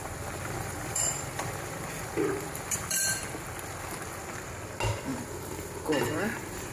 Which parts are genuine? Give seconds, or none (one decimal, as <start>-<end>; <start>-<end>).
3.2-5.1